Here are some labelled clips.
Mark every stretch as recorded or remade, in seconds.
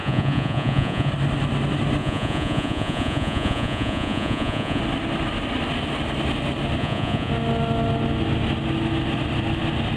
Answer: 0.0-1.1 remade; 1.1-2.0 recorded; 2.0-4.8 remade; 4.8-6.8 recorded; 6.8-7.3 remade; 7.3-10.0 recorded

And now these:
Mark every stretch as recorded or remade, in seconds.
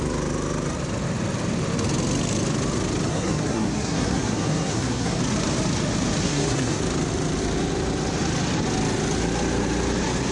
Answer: 0.0-3.1 recorded; 3.1-5.2 remade; 5.2-6.2 recorded; 6.2-6.8 remade; 6.8-10.3 recorded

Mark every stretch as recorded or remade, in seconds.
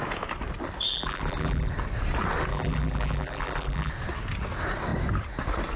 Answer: 0.0-0.9 recorded; 0.9-1.7 remade; 1.7-2.5 recorded; 2.5-3.9 remade; 3.9-5.8 recorded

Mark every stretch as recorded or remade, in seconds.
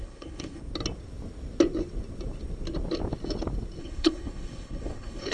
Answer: 0.0-0.6 remade; 0.6-3.8 recorded; 3.8-5.3 remade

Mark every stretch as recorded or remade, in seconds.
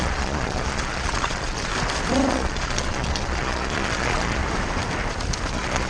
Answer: 0.0-1.7 remade; 1.7-2.3 recorded; 2.3-4.4 remade; 4.4-5.5 recorded; 5.5-5.9 remade